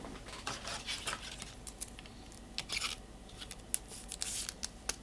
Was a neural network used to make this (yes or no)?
no